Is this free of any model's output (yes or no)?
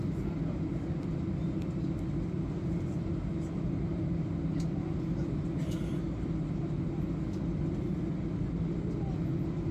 yes